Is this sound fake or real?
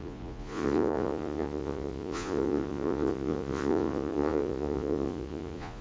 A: fake